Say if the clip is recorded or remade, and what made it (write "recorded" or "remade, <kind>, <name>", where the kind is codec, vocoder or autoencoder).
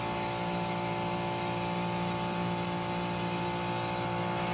recorded